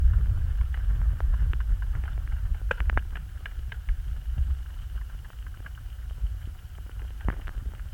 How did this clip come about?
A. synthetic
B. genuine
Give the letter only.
A